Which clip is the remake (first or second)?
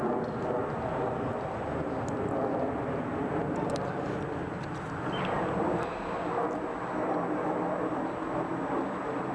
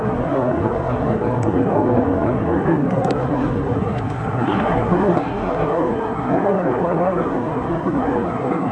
second